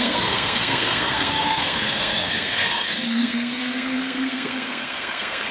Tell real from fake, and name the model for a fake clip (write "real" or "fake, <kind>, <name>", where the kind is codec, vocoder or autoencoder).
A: fake, codec, SNAC